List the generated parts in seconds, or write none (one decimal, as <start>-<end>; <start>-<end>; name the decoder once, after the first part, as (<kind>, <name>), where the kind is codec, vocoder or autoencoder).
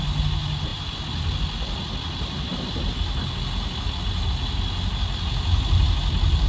none